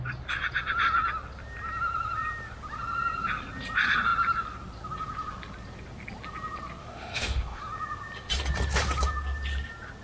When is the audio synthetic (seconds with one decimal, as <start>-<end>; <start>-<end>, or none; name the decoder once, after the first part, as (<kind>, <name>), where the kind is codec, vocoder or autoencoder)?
6.8-7.6 (autoencoder, DAC-VAE)